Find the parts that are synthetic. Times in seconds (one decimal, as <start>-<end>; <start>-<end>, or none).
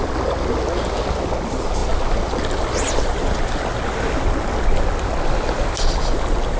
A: none